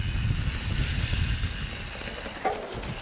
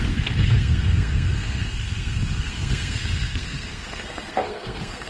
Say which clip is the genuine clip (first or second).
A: first